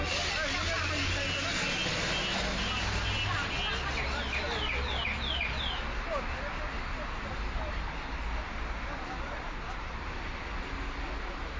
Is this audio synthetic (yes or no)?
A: no